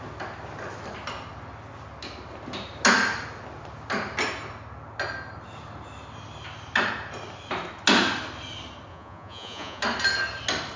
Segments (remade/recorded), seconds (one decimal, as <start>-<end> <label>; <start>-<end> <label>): 0.0-8.9 recorded; 8.9-9.8 remade; 9.8-10.8 recorded

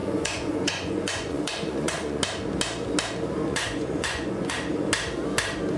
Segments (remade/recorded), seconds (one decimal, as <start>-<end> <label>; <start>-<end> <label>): 0.0-2.2 remade; 2.2-3.5 recorded; 3.5-4.5 remade; 4.5-5.8 recorded